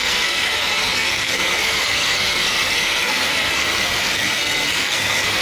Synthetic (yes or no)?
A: yes